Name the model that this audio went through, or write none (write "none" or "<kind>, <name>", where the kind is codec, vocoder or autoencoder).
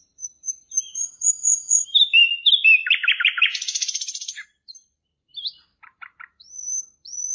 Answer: vocoder, BigVGAN v2